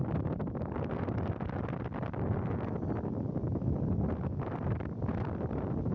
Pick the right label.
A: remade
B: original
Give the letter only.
B